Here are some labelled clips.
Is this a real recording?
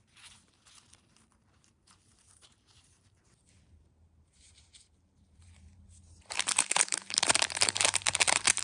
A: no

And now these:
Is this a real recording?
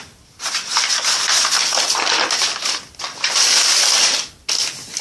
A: yes